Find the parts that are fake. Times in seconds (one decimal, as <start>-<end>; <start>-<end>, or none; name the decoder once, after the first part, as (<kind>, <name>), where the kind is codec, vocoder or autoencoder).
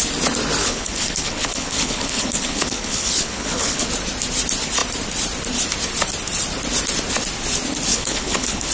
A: 0.6-3.9 (codec, HILCodec); 7.9-8.7